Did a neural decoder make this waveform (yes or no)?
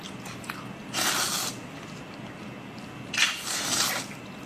no